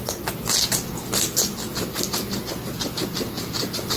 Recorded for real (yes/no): yes